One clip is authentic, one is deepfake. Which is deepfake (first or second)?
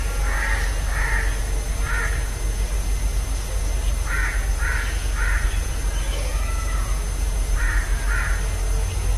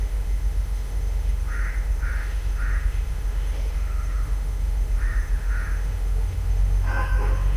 second